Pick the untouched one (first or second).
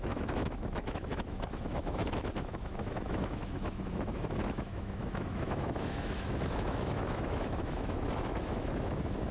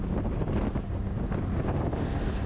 second